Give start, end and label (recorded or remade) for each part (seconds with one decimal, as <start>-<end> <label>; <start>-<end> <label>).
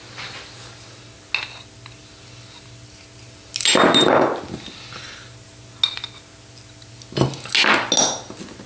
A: 0.0-8.7 recorded